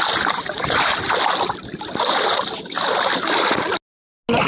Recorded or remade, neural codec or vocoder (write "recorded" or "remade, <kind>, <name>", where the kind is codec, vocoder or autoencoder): recorded